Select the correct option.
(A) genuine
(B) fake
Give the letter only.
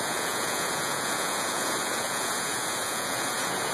B